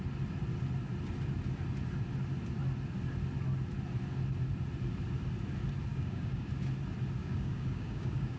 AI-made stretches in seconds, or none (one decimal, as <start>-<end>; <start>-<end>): 5.9-6.5; 7.2-8.4

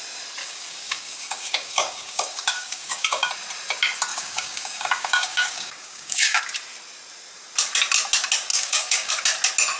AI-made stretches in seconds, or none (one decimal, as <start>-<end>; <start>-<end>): 0.4-3.3; 4.1-6.4; 8.5-9.1

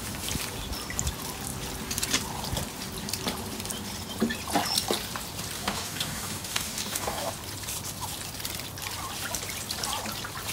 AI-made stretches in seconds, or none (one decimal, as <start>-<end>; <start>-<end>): 5.6-7.3

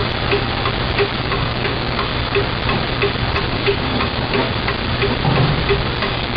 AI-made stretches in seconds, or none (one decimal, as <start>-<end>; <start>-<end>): 1.2-2.1; 3.5-4.4; 6.0-6.4